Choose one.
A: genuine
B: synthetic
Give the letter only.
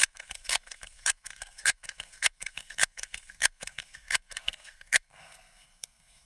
B